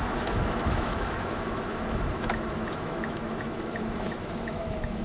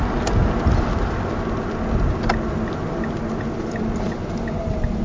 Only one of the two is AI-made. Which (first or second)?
first